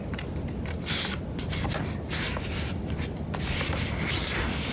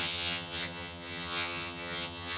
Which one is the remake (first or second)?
second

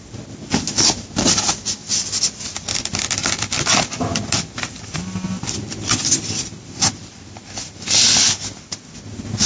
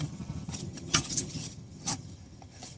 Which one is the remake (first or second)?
second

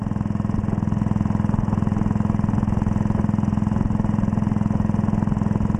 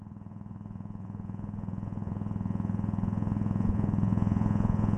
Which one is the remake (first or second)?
second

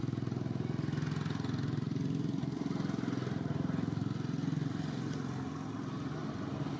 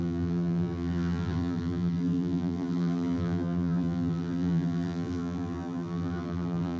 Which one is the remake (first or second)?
second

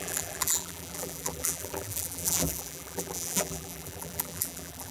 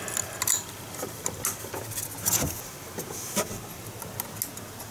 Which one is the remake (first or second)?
first